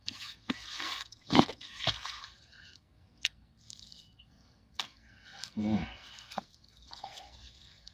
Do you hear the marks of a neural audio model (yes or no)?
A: yes